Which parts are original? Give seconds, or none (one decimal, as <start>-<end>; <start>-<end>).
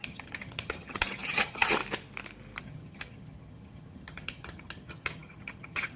1.8-2.6